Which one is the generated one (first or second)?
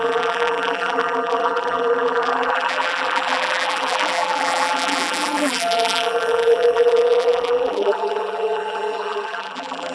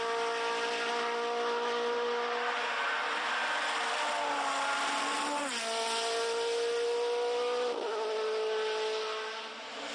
first